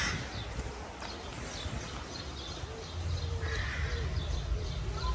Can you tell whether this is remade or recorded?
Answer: recorded